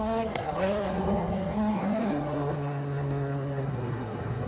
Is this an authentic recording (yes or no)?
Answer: no